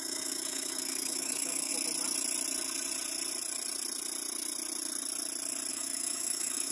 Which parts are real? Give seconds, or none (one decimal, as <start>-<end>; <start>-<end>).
1.7-5.7